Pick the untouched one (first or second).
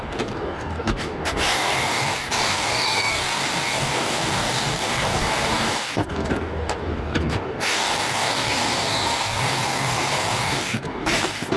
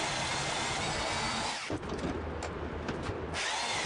second